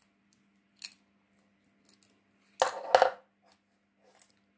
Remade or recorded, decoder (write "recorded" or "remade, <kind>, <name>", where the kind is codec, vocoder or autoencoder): recorded